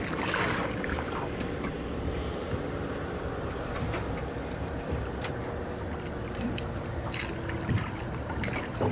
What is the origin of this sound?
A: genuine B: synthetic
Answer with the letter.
A